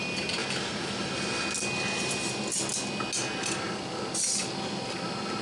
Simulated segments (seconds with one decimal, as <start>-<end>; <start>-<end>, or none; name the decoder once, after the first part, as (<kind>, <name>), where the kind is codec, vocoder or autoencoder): none